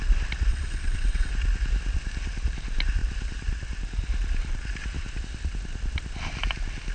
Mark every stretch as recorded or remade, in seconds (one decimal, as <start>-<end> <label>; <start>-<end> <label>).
0.0-0.5 recorded; 0.5-1.3 remade; 1.3-6.9 recorded